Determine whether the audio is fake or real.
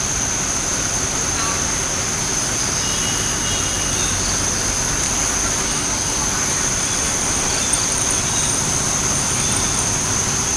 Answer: real